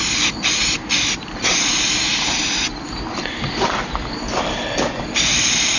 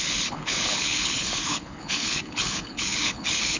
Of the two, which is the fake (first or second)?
second